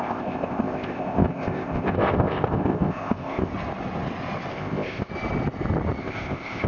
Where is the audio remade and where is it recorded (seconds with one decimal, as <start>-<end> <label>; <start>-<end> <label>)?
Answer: 0.0-3.5 remade; 3.5-4.5 recorded; 4.5-5.1 remade; 5.1-6.0 recorded; 6.0-6.7 remade